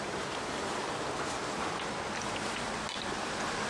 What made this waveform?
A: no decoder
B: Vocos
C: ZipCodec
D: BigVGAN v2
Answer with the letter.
A